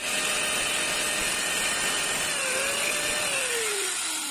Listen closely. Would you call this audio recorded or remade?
recorded